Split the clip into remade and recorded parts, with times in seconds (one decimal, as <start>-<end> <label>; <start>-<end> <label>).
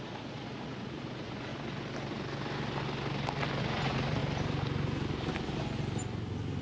0.0-1.5 remade; 1.5-3.6 recorded; 3.6-4.2 remade; 4.2-6.6 recorded